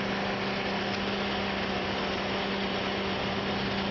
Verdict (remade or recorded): recorded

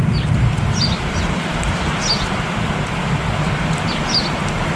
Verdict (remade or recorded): recorded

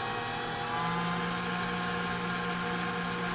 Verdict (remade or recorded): recorded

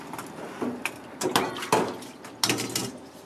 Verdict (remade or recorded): recorded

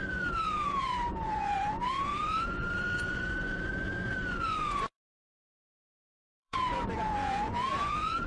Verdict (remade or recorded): remade